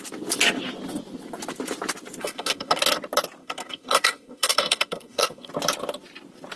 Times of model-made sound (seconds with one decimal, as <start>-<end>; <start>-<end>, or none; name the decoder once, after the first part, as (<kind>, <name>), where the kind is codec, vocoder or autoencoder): 2.2-2.8 (codec, SNAC); 3.4-5.5